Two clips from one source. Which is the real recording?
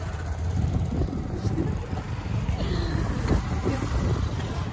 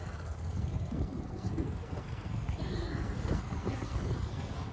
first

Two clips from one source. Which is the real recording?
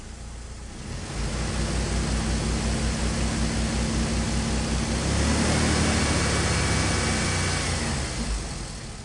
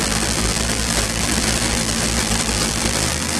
first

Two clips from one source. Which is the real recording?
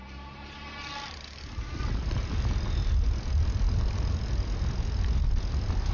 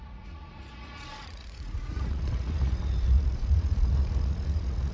first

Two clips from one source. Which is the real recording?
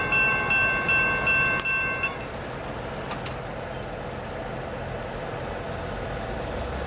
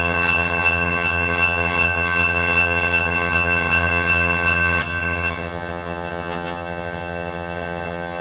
first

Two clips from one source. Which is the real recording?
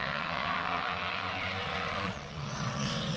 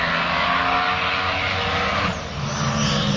second